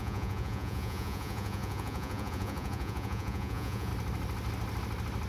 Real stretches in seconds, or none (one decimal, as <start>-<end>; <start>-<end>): 3.9-5.3